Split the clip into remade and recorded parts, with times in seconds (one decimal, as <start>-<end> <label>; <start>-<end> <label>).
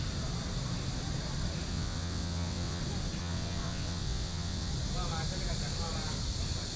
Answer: 0.0-1.7 recorded; 1.7-2.8 remade; 2.8-3.2 recorded; 3.2-4.7 remade; 4.7-6.8 recorded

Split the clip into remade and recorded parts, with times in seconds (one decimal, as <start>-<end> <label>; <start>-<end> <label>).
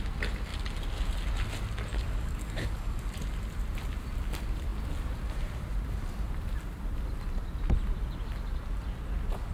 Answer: 0.0-1.9 recorded; 1.9-3.0 remade; 3.0-9.5 recorded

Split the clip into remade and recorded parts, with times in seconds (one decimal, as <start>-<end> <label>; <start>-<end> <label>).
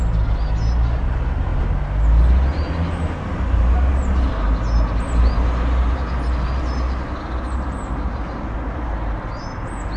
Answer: 0.0-10.0 recorded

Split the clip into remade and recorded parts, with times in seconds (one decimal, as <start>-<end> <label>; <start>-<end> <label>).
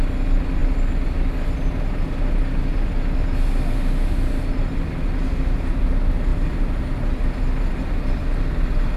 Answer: 0.0-9.0 recorded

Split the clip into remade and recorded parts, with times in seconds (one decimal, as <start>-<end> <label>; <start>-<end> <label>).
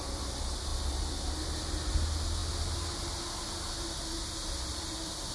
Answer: 0.0-5.3 recorded